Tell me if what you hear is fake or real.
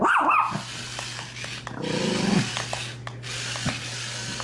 real